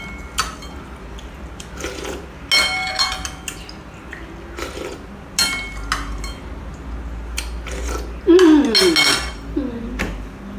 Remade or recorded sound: recorded